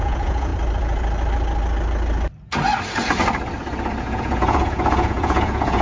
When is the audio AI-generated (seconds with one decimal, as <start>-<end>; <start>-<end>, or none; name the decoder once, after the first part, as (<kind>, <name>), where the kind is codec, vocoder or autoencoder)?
0.0-0.5 (vocoder, Vocos); 4.0-5.8